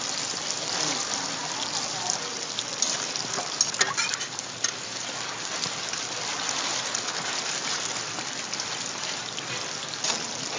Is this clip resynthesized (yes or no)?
no